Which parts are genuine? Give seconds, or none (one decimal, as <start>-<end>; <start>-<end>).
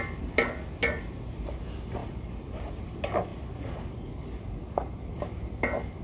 0.0-2.0; 2.8-6.0